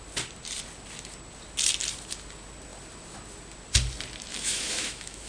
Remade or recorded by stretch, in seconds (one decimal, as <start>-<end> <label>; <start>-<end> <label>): 0.0-4.3 recorded; 4.3-5.3 remade